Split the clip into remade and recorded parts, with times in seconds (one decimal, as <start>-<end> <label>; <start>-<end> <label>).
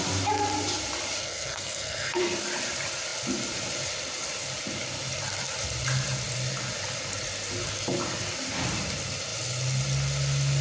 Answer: 0.0-1.2 recorded; 1.2-2.2 remade; 2.2-10.6 recorded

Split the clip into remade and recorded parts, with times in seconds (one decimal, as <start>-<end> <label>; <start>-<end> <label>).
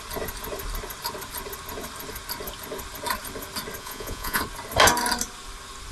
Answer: 0.0-3.8 recorded; 3.8-4.4 remade; 4.4-5.9 recorded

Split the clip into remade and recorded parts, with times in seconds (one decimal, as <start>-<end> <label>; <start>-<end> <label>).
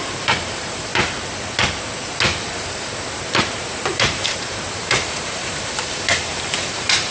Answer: 0.0-0.9 remade; 0.9-2.5 recorded; 2.5-2.9 remade; 2.9-3.4 recorded; 3.4-7.1 remade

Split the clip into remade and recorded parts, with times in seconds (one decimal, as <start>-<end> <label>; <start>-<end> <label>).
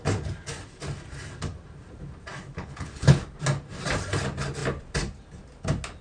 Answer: 0.0-2.6 recorded; 2.6-3.2 remade; 3.2-6.0 recorded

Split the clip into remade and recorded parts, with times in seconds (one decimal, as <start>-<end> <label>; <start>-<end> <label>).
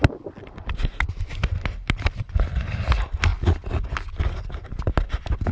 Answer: 0.0-5.5 recorded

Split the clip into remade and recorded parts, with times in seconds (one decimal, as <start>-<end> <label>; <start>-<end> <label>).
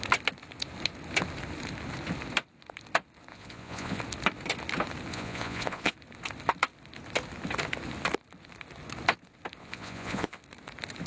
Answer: 0.0-3.3 recorded; 3.3-4.0 remade; 4.0-5.1 recorded; 5.1-5.9 remade; 5.9-9.6 recorded; 9.6-10.4 remade; 10.4-11.1 recorded